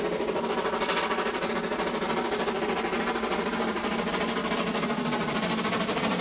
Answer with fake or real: real